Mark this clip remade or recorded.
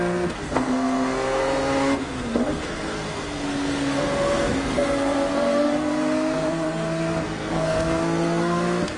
remade